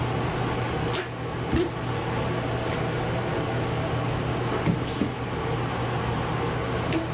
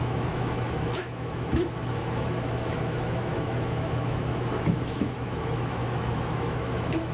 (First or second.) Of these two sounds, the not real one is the second